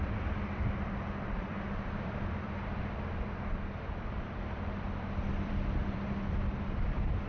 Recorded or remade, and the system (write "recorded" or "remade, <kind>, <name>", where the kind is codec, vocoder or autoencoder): remade, vocoder, BigVGAN v2